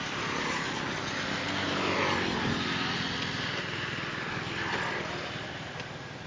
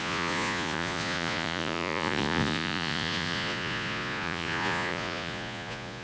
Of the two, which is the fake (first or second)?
second